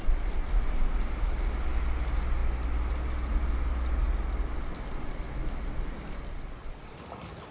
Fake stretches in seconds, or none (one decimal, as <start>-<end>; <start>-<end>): none